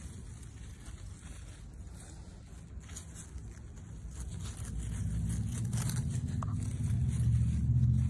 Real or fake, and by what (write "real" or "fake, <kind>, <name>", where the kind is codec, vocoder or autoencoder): real